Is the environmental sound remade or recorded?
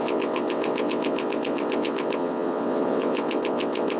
remade